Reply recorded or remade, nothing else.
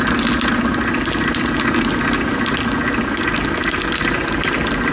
recorded